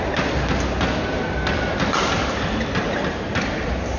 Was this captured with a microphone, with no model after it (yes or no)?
yes